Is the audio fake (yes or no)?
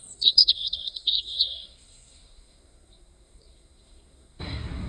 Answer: yes